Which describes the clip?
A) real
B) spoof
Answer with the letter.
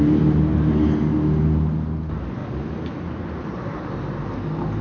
A